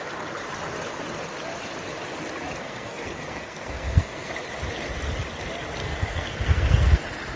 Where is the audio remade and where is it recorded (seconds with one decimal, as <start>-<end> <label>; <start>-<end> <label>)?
0.0-2.6 recorded; 2.6-4.3 remade; 4.3-5.8 recorded; 5.8-7.0 remade; 7.0-7.4 recorded